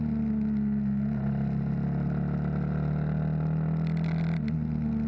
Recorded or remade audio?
recorded